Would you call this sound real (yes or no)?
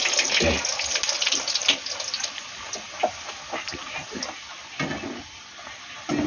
yes